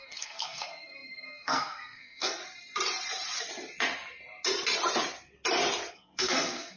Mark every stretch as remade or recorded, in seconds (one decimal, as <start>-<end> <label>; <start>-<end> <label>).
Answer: 0.0-2.4 remade; 2.4-5.9 recorded; 5.9-6.8 remade